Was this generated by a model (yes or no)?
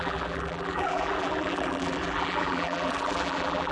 yes